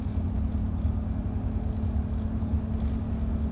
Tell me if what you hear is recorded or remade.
recorded